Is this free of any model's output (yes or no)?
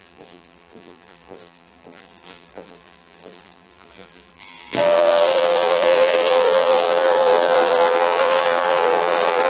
no